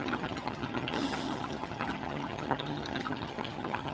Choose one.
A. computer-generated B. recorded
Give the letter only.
A